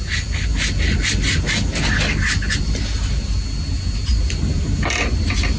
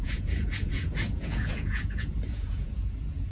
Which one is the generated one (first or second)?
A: second